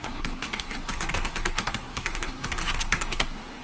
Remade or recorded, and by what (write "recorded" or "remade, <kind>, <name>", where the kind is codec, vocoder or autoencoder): remade, codec, SNAC